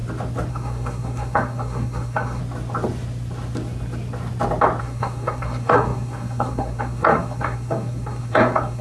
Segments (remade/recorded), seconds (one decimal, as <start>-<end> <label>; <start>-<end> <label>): 0.0-0.5 recorded; 0.5-2.4 remade; 2.4-4.8 recorded; 4.8-8.8 remade